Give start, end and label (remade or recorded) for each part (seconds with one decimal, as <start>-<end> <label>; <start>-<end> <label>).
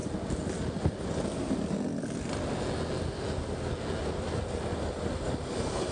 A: 0.0-5.9 recorded